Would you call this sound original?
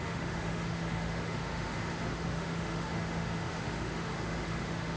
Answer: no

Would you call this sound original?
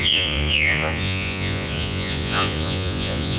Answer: no